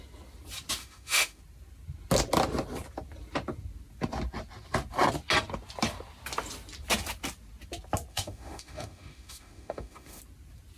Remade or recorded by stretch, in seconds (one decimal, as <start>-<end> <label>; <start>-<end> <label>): 0.0-0.8 recorded; 0.8-1.4 remade; 1.4-8.1 recorded; 8.1-10.2 remade; 10.2-10.8 recorded